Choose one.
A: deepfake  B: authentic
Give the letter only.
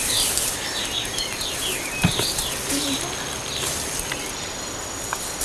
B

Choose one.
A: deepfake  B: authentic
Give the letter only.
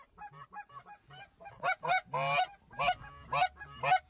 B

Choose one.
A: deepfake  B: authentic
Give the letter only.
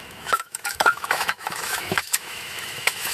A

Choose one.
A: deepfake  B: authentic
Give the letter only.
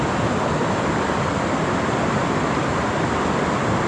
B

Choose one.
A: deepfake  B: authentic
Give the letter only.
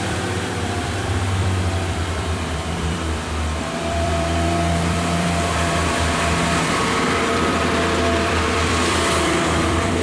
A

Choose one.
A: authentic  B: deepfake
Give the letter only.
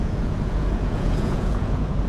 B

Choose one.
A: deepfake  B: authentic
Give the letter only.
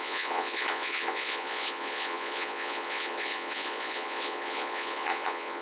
A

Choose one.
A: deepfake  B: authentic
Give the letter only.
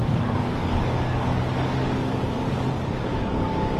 A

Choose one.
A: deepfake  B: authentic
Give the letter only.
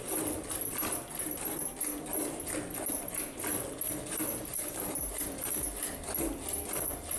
B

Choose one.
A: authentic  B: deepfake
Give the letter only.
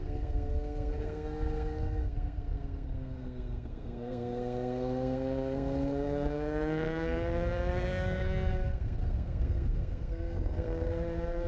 B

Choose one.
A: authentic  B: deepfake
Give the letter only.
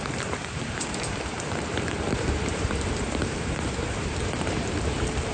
B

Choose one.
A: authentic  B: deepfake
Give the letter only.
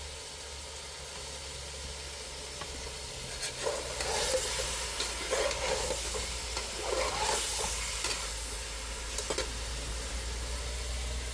A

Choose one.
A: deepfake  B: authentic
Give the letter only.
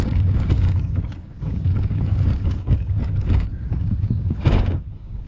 A